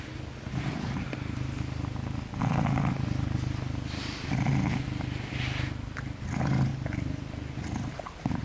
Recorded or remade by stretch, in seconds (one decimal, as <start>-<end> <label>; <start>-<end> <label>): 0.0-8.4 recorded